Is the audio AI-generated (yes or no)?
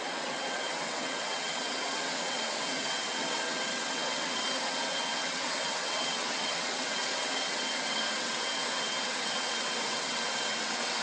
yes